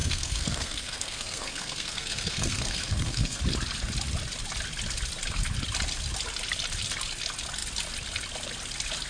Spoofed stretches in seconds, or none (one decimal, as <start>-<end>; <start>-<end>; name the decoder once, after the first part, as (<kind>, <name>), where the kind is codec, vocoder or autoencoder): 0.0-3.4 (codec, SNAC)